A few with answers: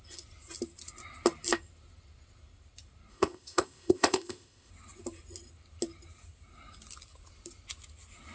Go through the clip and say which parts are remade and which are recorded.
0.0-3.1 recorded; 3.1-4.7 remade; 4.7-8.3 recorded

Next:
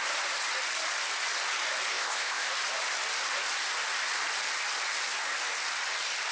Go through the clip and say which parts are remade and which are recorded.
0.0-1.9 recorded; 1.9-2.5 remade; 2.5-6.3 recorded

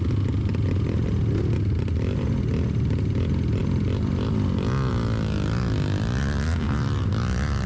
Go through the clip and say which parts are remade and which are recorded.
0.0-7.7 recorded

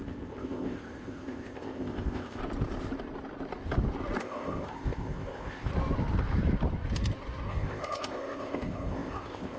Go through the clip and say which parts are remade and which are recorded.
0.0-2.4 remade; 2.4-4.2 recorded; 4.2-5.7 remade; 5.7-7.5 recorded; 7.5-9.6 remade

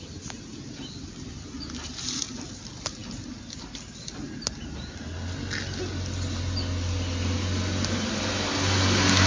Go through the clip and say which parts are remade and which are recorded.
0.0-9.3 recorded

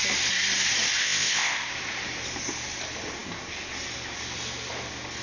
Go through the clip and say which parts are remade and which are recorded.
0.0-1.0 recorded; 1.0-1.7 remade; 1.7-5.2 recorded

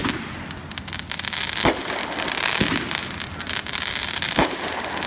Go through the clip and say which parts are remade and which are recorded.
0.0-5.1 recorded